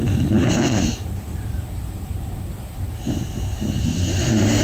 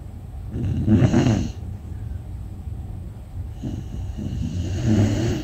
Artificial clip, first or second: first